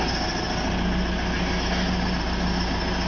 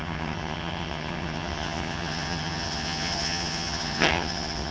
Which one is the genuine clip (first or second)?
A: first